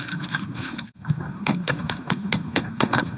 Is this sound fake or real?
fake